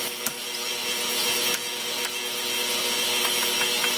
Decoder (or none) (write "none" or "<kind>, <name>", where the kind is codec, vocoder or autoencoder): none